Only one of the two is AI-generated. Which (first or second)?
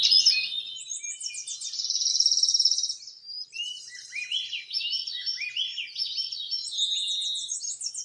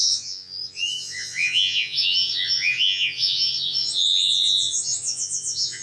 second